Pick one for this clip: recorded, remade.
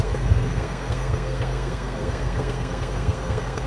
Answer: remade